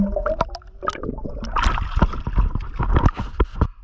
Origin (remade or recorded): recorded